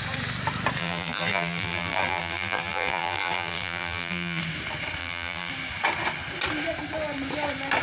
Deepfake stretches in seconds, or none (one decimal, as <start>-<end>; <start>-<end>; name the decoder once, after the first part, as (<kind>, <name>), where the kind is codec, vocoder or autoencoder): 0.8-4.4 (vocoder, BigVGAN v2); 5.0-5.5